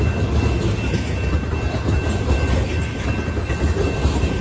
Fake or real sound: real